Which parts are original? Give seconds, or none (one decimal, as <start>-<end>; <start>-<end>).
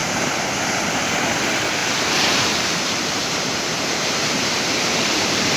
0.5-1.8